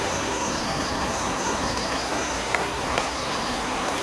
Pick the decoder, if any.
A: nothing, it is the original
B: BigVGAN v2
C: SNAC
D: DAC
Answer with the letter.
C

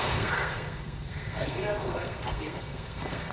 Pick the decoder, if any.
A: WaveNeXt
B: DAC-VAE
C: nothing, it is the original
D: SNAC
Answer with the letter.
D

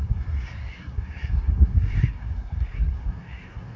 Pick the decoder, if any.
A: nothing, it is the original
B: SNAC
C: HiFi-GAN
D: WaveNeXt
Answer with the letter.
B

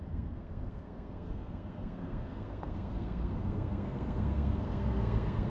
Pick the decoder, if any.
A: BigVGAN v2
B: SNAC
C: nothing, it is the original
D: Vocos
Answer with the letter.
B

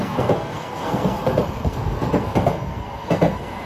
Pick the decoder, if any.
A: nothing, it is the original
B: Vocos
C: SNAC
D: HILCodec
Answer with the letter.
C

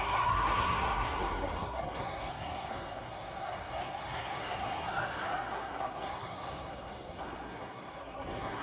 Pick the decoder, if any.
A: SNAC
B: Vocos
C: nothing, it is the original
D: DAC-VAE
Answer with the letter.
A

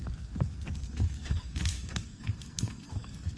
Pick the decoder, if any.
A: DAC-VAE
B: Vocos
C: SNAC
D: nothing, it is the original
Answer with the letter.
C